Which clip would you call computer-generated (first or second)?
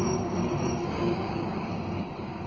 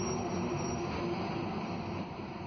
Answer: first